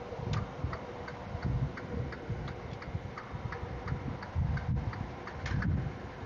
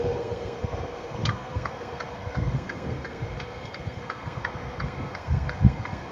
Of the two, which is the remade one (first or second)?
second